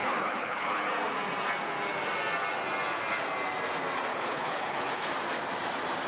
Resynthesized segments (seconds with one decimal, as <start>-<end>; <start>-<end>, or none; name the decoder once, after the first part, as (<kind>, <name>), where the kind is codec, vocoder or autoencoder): 0.0-0.9 (codec, HILCodec); 4.1-5.1